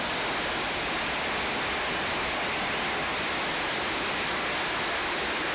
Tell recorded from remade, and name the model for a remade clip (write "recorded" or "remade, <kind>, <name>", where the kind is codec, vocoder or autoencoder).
recorded